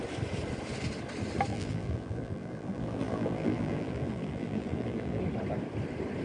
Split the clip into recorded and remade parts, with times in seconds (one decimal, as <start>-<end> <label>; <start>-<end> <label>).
0.0-1.5 recorded; 1.5-5.2 remade; 5.2-6.2 recorded